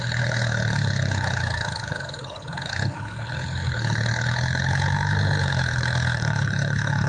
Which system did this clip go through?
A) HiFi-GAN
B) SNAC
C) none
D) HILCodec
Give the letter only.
D